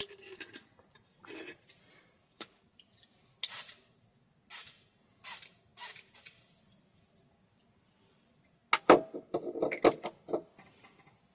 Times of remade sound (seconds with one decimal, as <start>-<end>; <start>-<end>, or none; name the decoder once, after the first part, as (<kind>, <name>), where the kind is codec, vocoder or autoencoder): none